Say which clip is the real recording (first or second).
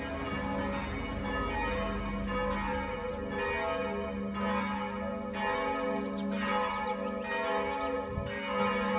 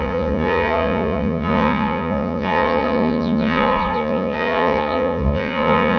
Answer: first